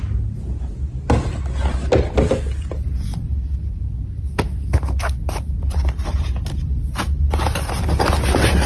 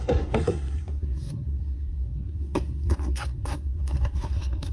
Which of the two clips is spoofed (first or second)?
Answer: second